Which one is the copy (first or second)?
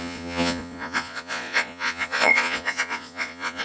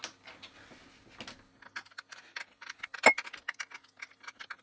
first